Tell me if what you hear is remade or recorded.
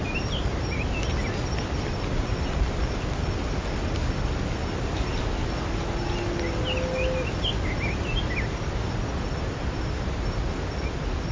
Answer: recorded